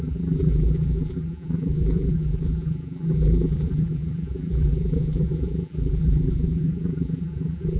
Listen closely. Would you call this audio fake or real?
fake